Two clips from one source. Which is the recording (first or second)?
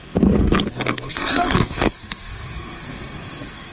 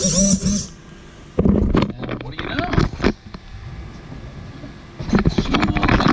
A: second